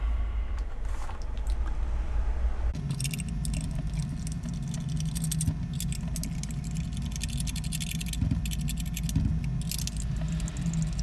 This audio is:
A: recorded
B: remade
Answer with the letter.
A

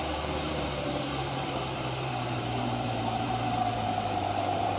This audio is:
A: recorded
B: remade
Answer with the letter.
B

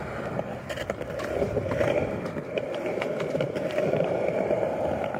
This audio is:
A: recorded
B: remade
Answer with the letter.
B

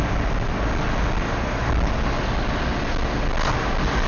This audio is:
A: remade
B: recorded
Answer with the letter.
B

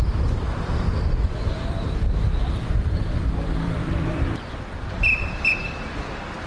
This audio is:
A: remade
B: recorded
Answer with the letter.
A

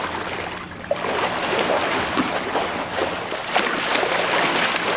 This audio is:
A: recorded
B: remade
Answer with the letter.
A